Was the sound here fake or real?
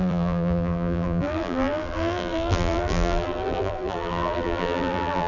fake